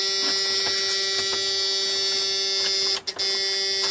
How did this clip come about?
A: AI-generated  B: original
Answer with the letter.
B